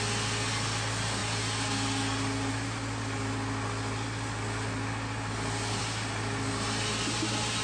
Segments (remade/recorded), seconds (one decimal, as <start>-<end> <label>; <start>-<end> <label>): 0.0-7.6 recorded